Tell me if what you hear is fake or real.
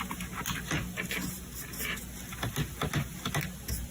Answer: real